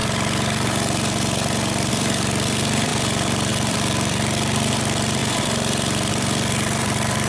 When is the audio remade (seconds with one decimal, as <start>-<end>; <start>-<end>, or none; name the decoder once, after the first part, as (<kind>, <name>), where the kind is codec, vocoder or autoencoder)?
1.9-5.2 (vocoder, BigVGAN v2); 6.1-7.3